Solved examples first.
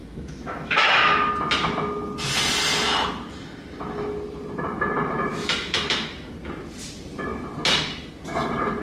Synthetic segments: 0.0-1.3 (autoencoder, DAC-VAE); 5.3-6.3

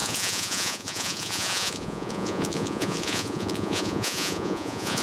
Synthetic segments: 0.0-5.0 (vocoder, Vocos)

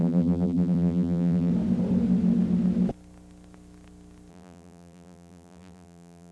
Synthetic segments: 0.0-1.5 (vocoder, BigVGAN v2); 4.3-6.3

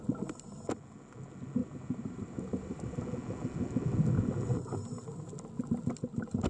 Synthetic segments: 1.6-2.9 (vocoder, BigVGAN v2)

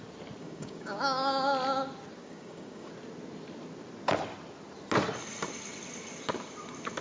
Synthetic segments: 0.4-1.0 (codec, DAC); 2.2-2.9